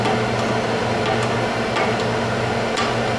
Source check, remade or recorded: recorded